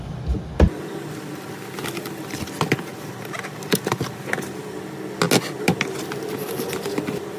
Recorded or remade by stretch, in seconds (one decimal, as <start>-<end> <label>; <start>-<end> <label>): 0.0-7.4 recorded